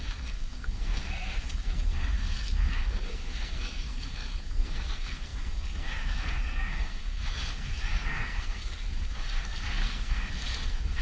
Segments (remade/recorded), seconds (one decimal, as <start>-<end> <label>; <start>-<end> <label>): 0.0-11.0 remade